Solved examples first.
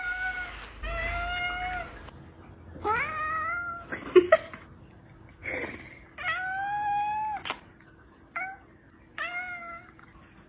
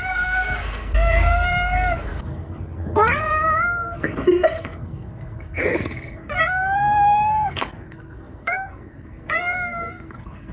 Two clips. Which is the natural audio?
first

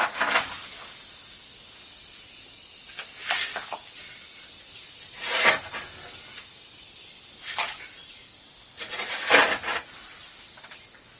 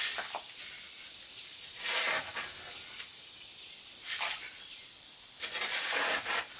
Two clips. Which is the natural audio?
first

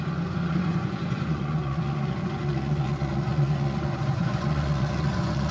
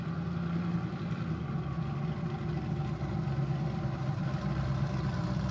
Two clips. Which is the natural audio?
second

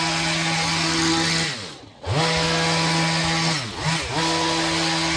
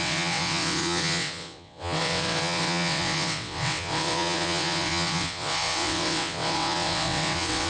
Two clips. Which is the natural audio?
first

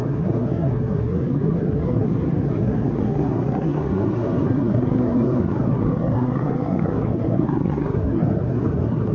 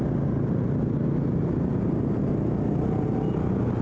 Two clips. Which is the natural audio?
second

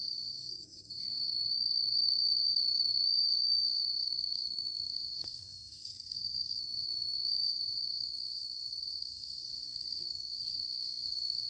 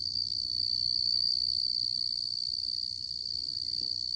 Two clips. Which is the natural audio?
second